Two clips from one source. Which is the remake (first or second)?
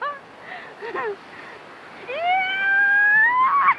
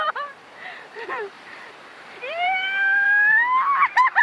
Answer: second